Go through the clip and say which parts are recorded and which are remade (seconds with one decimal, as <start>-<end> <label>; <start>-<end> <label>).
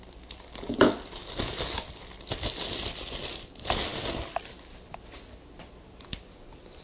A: 0.0-6.8 recorded